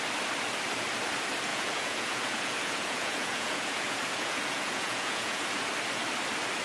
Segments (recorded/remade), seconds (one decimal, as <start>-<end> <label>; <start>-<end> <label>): 0.0-1.5 recorded; 1.5-5.5 remade; 5.5-6.6 recorded